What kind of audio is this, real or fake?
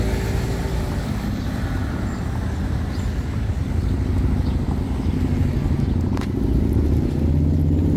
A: real